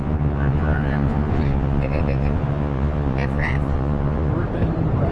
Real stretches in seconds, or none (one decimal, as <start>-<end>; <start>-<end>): 4.3-5.1